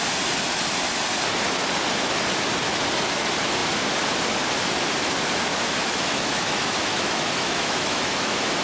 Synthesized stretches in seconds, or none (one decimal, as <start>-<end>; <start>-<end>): 5.5-8.6